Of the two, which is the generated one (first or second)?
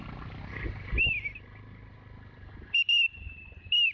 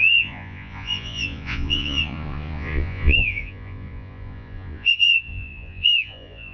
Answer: second